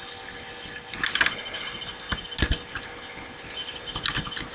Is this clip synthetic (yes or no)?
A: no